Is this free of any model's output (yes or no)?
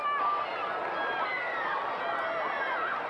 yes